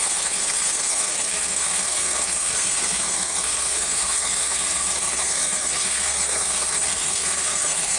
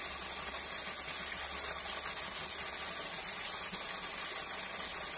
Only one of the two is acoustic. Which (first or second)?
second